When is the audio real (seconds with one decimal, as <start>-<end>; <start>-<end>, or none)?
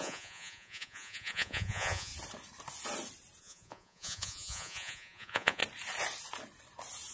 2.1-3.4; 5.6-7.1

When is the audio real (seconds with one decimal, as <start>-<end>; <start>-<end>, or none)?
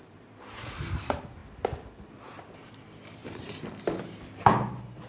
1.4-1.9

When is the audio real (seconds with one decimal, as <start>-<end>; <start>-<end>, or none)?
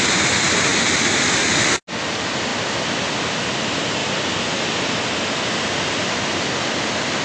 0.0-7.2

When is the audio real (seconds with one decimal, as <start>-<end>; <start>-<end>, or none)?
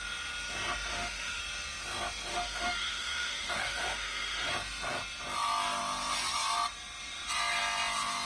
0.0-0.9; 1.4-2.3; 4.5-8.3